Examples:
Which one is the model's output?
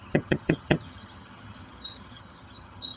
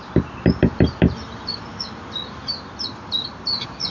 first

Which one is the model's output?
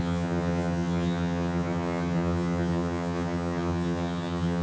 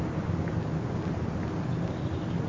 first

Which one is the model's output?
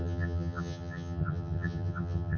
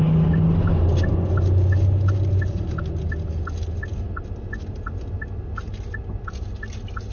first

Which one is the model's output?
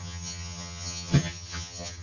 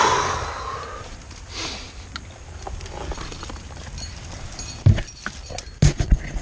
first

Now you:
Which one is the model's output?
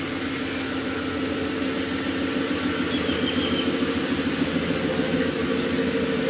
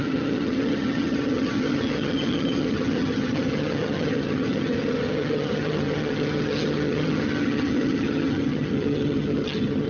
second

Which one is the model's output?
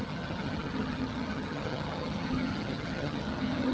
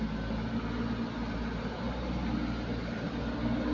first